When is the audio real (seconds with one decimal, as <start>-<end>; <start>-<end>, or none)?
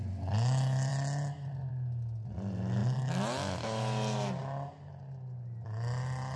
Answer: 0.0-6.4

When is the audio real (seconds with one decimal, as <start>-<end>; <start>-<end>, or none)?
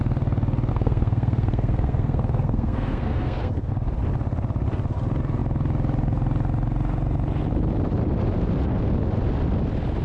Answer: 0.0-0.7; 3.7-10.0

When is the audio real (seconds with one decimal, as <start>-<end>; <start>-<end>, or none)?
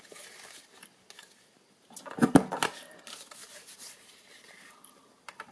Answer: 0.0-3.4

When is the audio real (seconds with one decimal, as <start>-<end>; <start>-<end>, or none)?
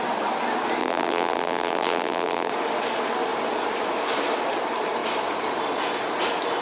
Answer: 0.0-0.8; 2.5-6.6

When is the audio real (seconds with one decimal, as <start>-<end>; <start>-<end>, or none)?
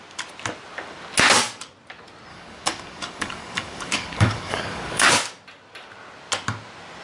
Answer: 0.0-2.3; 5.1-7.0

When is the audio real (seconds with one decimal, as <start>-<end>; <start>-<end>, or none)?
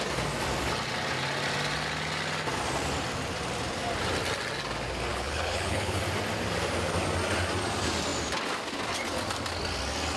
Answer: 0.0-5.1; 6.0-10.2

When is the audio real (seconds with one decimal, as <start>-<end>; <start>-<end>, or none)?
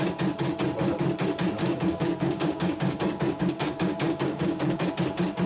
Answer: 0.0-1.6; 4.9-5.5